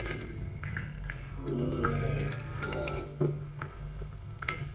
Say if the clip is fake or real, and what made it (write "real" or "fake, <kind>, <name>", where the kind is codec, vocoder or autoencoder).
fake, codec, SNAC